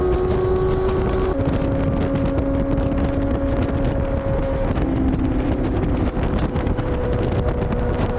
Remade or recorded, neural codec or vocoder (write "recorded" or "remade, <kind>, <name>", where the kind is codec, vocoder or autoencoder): recorded